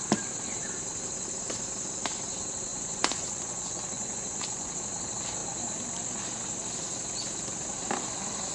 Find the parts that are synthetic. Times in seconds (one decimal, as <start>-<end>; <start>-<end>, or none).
2.7-4.7